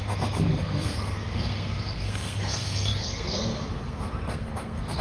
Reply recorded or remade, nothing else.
remade